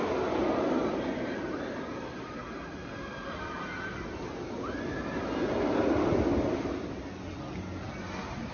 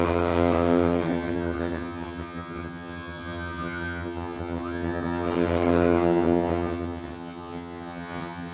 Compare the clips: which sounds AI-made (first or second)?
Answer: second